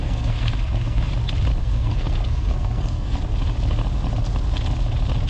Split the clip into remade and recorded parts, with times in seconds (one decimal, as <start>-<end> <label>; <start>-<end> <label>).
0.0-1.1 remade; 1.1-1.6 recorded; 1.6-3.2 remade; 3.2-5.3 recorded